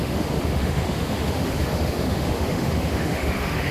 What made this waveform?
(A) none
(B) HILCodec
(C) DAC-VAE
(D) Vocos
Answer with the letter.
C